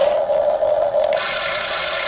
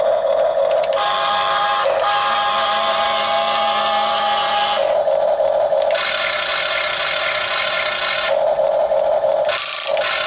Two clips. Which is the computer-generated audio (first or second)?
first